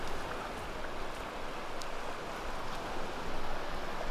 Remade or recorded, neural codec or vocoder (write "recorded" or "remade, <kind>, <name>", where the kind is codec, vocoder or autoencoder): recorded